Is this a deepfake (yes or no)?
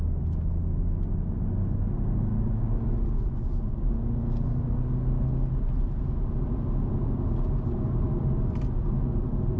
no